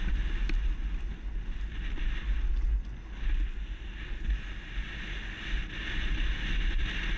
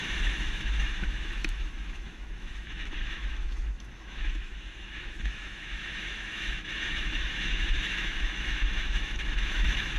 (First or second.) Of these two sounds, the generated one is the second